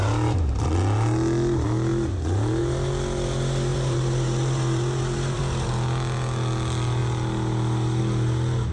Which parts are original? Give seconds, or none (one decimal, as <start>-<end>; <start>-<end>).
0.0-3.7; 5.4-8.7

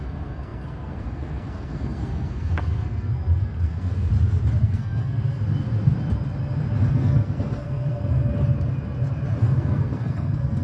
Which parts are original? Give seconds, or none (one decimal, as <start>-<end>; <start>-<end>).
4.1-4.6; 5.4-6.9; 8.3-9.4